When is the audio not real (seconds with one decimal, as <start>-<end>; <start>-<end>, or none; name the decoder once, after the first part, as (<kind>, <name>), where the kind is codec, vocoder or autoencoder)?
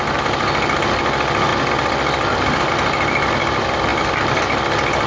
none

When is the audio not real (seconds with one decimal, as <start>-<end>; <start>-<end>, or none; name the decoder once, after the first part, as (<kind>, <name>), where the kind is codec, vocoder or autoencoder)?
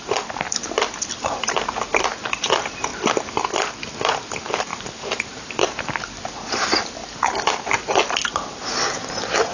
4.7-5.9 (vocoder, BigVGAN v2); 7.0-7.9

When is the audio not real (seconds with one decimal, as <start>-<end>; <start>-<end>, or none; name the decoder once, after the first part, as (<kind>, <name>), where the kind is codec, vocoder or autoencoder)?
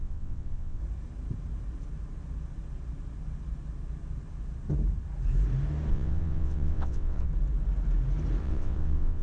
0.0-0.8 (vocoder, WaveNeXt); 5.9-7.3; 8.4-9.2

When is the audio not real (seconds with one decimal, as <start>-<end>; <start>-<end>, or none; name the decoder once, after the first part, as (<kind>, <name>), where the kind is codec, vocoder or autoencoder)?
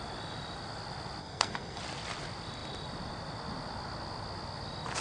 1.2-1.8 (codec, SNAC)